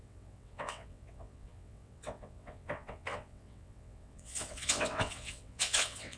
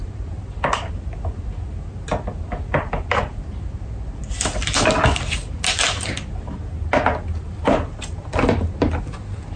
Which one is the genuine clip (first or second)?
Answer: second